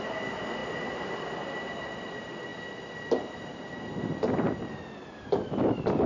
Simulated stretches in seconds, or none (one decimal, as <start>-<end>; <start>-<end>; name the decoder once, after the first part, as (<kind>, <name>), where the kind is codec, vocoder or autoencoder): none